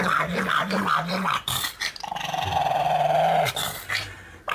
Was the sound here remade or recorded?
remade